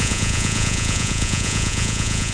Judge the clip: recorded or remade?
remade